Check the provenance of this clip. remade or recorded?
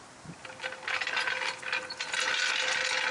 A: recorded